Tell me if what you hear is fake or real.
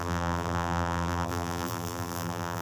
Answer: fake